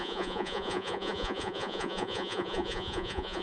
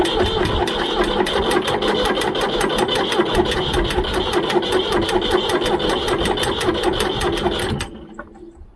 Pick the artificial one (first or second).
first